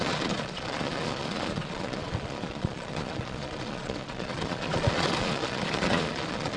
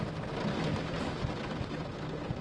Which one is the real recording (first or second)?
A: second